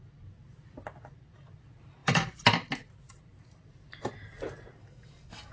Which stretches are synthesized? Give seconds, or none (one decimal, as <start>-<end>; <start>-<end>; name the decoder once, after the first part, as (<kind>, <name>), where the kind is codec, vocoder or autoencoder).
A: 4.8-5.5 (codec, DAC)